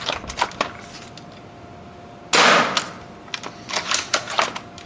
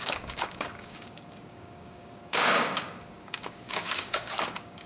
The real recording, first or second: first